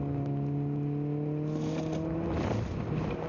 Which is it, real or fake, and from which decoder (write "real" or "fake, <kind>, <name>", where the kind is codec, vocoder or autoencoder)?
real